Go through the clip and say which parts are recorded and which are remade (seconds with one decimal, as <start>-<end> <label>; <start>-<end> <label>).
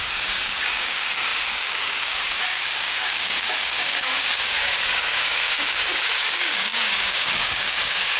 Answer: 0.0-8.2 remade